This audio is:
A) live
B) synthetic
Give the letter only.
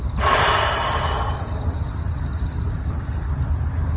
A